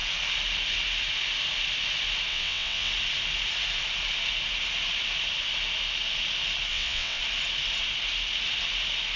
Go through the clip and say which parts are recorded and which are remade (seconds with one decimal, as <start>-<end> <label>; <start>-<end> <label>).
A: 0.0-2.3 recorded; 2.3-2.9 remade; 2.9-6.7 recorded; 6.7-7.2 remade; 7.2-9.2 recorded